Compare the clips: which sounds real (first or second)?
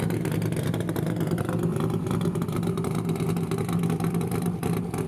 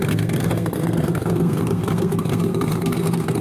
first